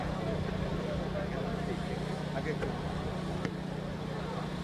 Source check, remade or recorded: recorded